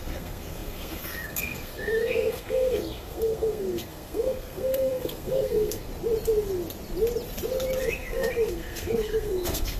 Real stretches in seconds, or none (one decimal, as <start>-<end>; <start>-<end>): 5.9-7.8